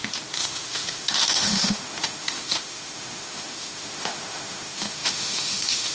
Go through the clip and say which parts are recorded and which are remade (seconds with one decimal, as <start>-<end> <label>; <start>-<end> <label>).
0.0-5.9 remade

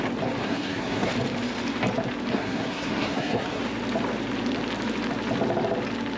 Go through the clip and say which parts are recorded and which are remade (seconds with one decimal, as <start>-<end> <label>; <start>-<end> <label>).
0.0-0.4 recorded; 0.4-1.1 remade; 1.1-2.3 recorded; 2.3-3.6 remade; 3.6-6.2 recorded

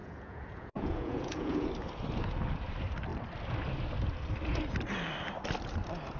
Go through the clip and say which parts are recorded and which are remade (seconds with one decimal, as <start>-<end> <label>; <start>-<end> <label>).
0.0-1.7 remade; 1.7-6.2 recorded

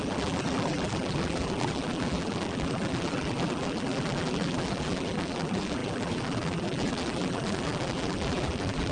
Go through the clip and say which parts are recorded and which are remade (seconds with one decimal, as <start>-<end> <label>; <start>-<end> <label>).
0.0-8.9 remade